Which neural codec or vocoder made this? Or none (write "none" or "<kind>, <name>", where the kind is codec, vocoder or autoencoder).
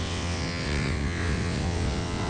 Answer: vocoder, WaveNeXt